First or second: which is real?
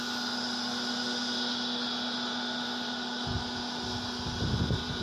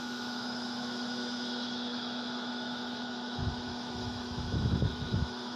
first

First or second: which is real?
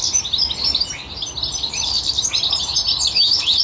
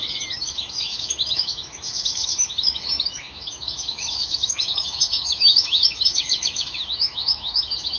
first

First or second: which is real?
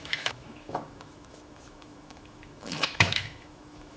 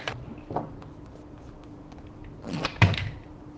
second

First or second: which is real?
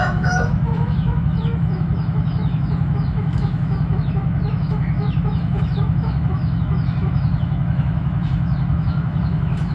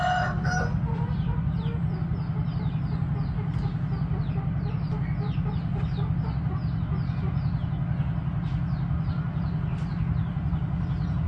second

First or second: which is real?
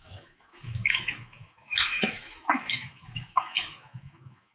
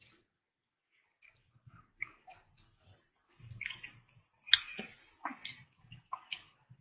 second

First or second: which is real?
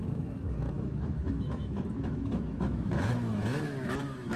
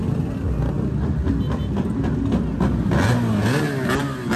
second